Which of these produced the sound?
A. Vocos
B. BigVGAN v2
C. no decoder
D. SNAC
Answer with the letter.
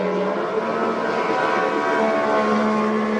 C